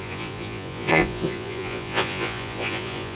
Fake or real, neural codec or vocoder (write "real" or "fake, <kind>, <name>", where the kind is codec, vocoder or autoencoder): fake, vocoder, Vocos